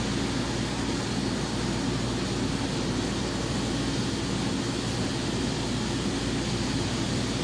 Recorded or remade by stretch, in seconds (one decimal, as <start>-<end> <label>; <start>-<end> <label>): 0.0-7.4 recorded